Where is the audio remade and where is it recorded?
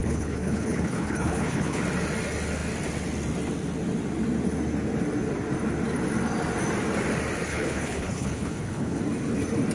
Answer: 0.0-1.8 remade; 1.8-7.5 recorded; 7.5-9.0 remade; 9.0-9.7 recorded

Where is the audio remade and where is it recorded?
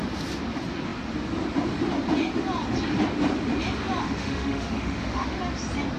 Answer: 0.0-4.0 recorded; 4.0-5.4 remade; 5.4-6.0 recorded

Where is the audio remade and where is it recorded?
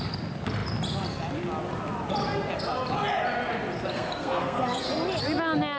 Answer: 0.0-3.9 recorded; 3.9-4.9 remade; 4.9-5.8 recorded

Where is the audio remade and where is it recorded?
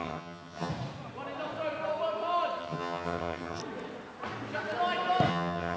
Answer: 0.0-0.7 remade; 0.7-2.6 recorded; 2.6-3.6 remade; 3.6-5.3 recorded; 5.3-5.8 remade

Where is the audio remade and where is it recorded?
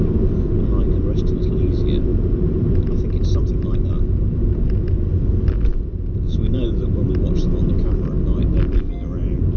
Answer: 0.0-2.1 recorded; 2.1-2.7 remade; 2.7-5.7 recorded; 5.7-7.1 remade; 7.1-9.6 recorded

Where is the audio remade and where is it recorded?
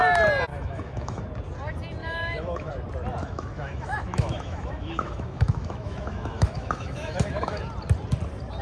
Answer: 0.0-0.5 recorded; 0.5-1.2 remade; 1.2-2.0 recorded; 2.0-2.7 remade; 2.7-3.2 recorded; 3.2-7.6 remade; 7.6-8.6 recorded